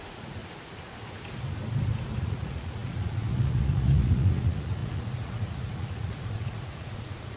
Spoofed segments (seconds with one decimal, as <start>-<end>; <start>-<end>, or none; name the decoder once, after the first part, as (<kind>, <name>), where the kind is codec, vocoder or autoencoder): 0.0-0.4 (vocoder, Vocos); 2.2-7.4